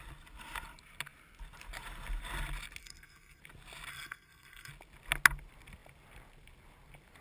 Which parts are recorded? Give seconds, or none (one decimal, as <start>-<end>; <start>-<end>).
0.0-2.8; 3.4-3.9; 4.7-7.2